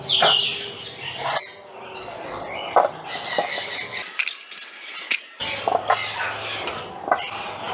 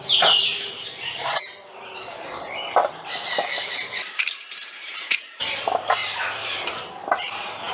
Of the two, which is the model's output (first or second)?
second